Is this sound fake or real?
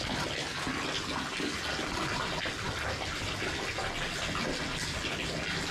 real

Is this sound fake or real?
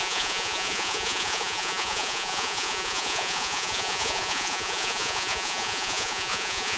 fake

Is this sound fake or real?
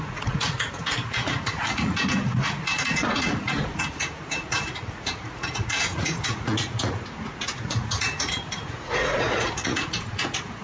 fake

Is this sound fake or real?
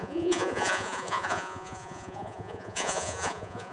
fake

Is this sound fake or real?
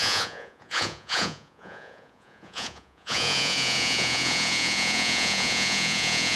fake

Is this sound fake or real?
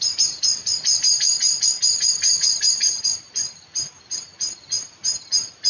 real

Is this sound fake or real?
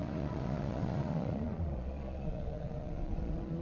fake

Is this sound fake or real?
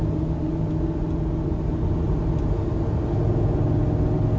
real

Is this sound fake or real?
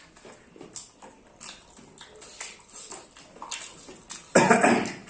real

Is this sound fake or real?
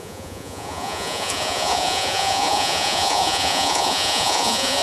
fake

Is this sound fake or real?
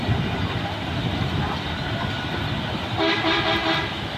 real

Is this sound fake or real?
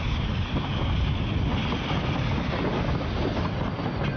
real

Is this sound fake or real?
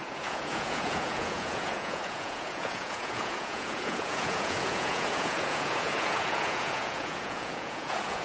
fake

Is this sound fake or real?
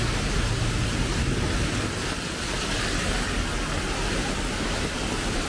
real